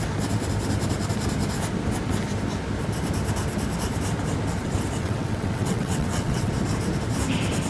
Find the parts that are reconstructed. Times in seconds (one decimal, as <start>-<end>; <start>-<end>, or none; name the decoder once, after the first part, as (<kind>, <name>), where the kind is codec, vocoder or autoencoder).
5.0-6.5 (vocoder, WaveNeXt)